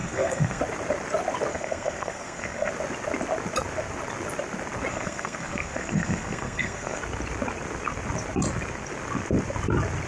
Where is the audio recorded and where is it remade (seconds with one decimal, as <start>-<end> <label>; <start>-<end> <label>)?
0.0-0.6 remade; 0.6-1.5 recorded; 1.5-2.7 remade; 2.7-4.9 recorded; 4.9-7.0 remade; 7.0-10.1 recorded